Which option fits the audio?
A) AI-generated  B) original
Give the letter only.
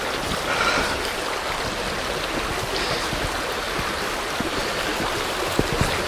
B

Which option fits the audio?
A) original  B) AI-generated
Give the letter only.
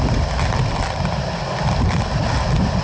A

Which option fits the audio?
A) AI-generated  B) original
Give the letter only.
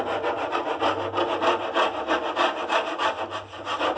B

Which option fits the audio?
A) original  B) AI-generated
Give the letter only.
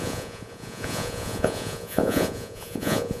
B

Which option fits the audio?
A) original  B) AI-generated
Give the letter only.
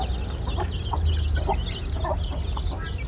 A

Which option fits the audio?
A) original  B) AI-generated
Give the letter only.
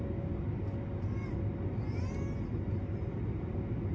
A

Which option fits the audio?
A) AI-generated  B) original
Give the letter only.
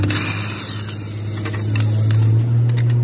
B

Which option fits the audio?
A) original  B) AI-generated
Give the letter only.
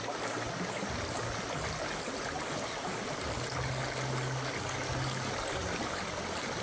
A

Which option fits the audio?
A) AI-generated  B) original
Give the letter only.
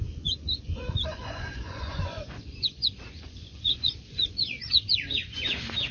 A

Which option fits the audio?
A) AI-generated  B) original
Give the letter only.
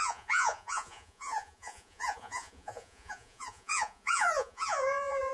A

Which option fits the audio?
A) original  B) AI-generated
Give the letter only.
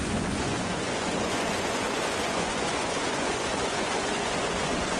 B